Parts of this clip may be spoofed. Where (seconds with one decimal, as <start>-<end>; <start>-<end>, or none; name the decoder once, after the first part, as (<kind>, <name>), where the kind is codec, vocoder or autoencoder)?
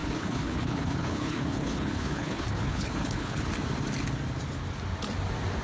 0.0-3.4 (codec, HILCodec)